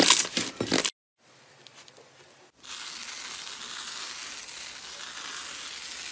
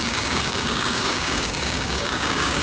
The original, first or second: first